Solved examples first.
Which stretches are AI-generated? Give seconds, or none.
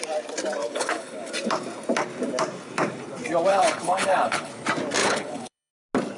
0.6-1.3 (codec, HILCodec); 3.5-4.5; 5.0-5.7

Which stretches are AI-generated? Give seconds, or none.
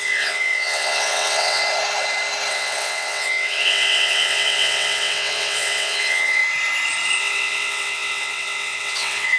0.0-1.6 (vocoder, WaveNeXt); 2.5-6.4; 7.2-9.4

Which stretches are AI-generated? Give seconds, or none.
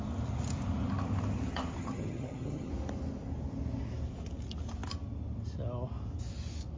1.8-2.7 (vocoder, HiFi-GAN)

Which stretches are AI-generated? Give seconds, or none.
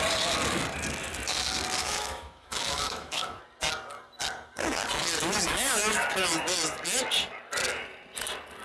1.8-3.4 (autoencoder, DAC-VAE)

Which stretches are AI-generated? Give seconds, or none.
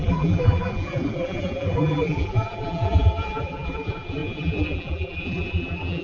0.0-6.0 (vocoder, BigVGAN v2)